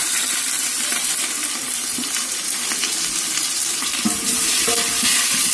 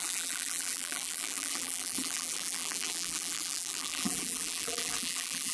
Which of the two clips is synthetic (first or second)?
second